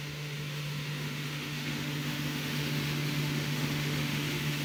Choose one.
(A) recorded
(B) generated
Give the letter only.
B